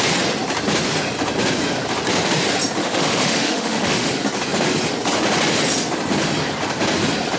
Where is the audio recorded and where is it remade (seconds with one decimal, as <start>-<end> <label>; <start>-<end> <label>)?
0.0-2.8 recorded; 2.8-4.1 remade; 4.1-7.4 recorded